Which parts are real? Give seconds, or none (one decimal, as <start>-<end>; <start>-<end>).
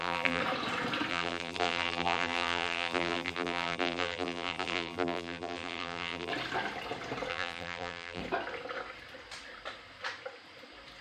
0.4-1.1; 6.3-7.3; 8.2-11.0